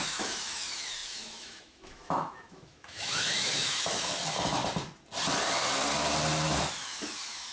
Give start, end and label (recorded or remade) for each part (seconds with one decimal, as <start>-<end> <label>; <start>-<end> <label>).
0.0-4.6 remade; 4.6-6.7 recorded; 6.7-7.5 remade